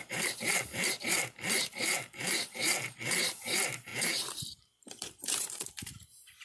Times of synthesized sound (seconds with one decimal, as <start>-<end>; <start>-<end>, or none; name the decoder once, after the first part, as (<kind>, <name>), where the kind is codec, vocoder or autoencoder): 0.0-6.4 (vocoder, BigVGAN v2)